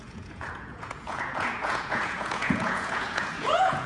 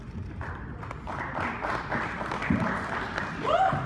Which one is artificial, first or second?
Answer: first